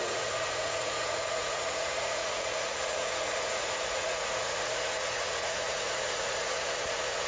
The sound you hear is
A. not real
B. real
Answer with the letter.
A